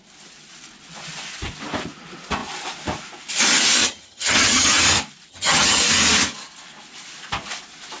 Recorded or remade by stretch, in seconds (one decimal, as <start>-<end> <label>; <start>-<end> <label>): 0.0-3.8 recorded; 3.8-4.8 remade; 4.8-5.3 recorded; 5.3-5.8 remade; 5.8-8.0 recorded